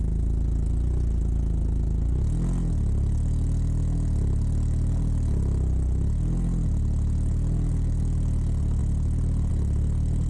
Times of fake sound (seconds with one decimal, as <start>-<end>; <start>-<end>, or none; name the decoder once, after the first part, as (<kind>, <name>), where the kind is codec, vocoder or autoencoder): none